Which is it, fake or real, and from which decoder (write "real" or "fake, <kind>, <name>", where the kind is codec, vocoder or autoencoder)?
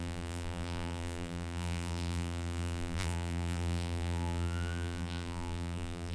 fake, vocoder, BigVGAN v2